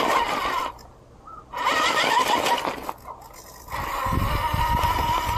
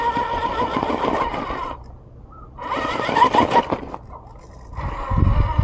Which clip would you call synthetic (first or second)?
second